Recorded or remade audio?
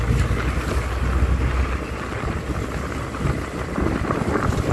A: recorded